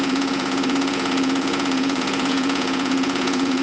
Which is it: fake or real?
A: fake